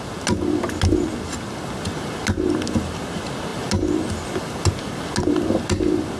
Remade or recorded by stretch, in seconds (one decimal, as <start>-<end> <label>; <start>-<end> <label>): 0.0-6.2 recorded